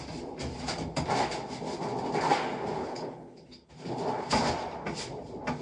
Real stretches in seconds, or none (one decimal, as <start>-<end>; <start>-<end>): 0.0-2.8; 3.7-5.6